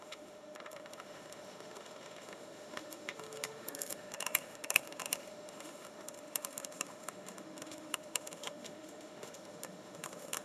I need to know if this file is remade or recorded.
remade